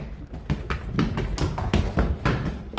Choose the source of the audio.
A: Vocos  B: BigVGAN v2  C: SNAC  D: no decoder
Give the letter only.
D